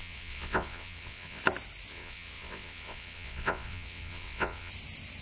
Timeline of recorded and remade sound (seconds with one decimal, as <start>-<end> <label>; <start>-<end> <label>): 0.0-1.4 remade; 1.4-1.9 recorded; 1.9-4.7 remade; 4.7-5.2 recorded